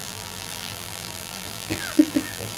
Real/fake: fake